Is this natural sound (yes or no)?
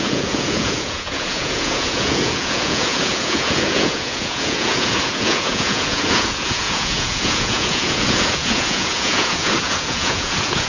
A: no